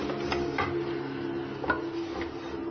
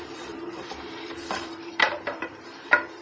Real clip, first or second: first